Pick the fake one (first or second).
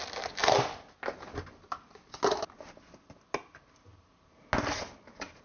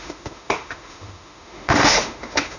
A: second